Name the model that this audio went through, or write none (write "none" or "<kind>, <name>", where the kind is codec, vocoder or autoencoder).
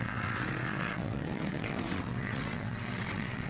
vocoder, WaveNeXt